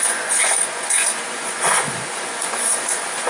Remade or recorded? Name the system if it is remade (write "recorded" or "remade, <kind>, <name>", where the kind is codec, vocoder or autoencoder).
remade, vocoder, Vocos